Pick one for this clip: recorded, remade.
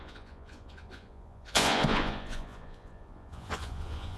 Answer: remade